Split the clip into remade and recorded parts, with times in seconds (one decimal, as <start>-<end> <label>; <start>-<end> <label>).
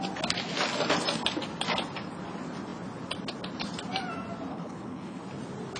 0.0-4.5 recorded; 4.5-5.2 remade; 5.2-5.8 recorded